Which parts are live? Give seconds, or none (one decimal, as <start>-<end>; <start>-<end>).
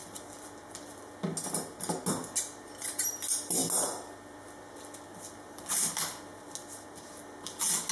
0.0-7.9